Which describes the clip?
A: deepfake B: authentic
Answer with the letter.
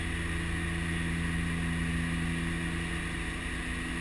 B